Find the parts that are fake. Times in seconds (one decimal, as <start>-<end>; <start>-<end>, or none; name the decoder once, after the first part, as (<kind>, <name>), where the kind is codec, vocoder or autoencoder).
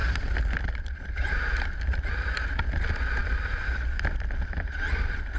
none